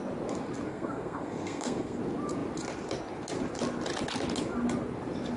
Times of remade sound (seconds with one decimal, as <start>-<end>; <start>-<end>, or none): 0.7-2.0